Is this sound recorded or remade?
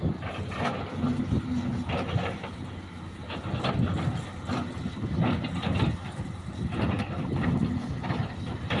recorded